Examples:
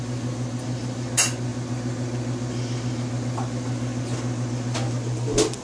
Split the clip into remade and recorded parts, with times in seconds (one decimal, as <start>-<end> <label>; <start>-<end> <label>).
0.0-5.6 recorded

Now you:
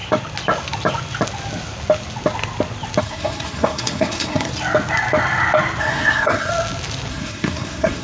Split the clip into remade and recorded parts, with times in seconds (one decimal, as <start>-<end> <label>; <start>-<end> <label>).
0.0-3.0 recorded; 3.0-4.5 remade; 4.5-5.8 recorded; 5.8-6.5 remade; 6.5-7.1 recorded; 7.1-8.0 remade

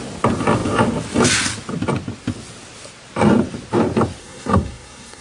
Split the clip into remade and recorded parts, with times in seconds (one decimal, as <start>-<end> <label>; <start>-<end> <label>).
0.0-4.2 recorded; 4.2-5.2 remade

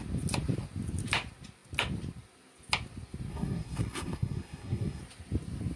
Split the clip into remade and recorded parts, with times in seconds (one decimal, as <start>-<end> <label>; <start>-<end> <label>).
0.0-3.3 recorded; 3.3-5.0 remade; 5.0-5.8 recorded